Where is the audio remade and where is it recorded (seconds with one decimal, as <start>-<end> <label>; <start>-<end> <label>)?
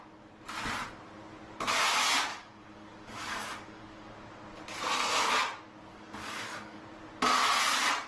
0.0-2.3 recorded; 2.3-4.1 remade; 4.1-5.9 recorded; 5.9-6.8 remade; 6.8-8.1 recorded